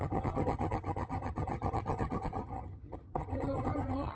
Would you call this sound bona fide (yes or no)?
no